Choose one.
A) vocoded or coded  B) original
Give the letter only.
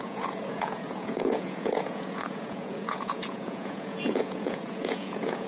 A